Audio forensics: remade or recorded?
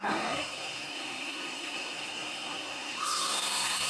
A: remade